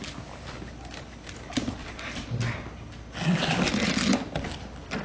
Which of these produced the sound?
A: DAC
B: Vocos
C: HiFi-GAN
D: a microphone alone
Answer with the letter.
D